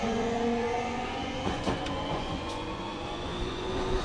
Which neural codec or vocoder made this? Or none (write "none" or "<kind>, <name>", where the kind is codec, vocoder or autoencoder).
vocoder, Vocos